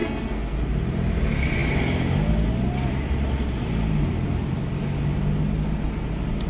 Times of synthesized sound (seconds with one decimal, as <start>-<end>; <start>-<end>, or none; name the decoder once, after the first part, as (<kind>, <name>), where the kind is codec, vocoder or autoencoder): 0.0-0.6 (codec, SNAC)